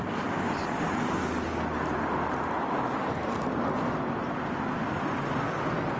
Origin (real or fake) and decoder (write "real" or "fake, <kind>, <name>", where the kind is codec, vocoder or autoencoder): real